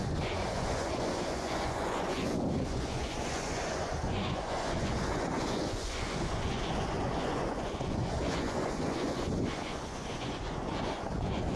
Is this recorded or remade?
remade